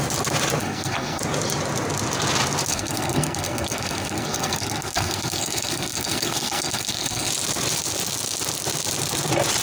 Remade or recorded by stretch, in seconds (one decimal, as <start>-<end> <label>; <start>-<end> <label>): 0.0-0.6 recorded; 0.6-1.2 remade; 1.2-2.7 recorded; 2.7-7.3 remade; 7.3-9.6 recorded